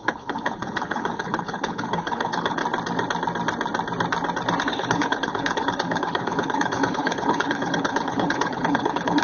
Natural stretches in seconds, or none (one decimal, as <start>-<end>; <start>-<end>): 2.6-4.6